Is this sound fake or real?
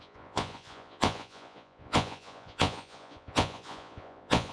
fake